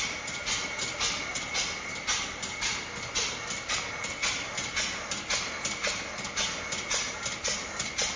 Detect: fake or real real